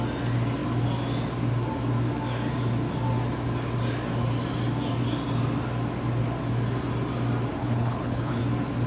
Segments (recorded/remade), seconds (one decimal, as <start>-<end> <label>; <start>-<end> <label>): 0.0-7.6 recorded; 7.6-8.4 remade; 8.4-8.9 recorded